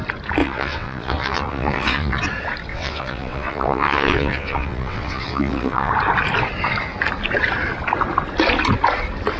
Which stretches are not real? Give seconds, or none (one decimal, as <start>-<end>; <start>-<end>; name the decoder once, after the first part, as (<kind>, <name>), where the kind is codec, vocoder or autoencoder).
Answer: 0.4-2.2 (vocoder, WaveNeXt); 2.7-5.9